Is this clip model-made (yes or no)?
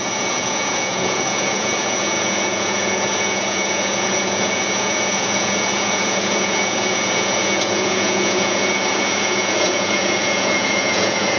yes